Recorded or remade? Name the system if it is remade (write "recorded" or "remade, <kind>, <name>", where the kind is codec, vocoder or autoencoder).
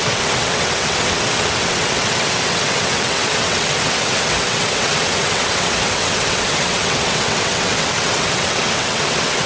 remade, vocoder, WaveNeXt